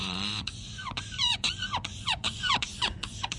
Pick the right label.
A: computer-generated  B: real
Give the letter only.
A